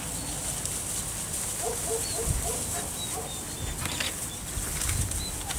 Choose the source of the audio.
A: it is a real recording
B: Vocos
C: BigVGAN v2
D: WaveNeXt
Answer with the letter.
A